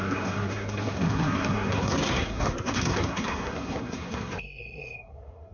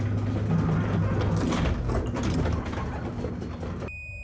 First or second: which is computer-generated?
first